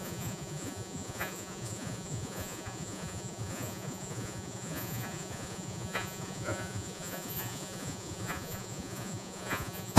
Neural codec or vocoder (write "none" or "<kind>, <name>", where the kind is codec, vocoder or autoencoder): vocoder, Vocos